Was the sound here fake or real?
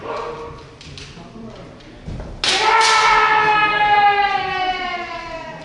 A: real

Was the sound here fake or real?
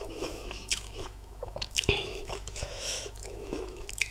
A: fake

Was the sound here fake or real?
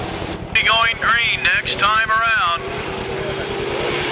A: real